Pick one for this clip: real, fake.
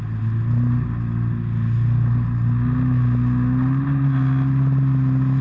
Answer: real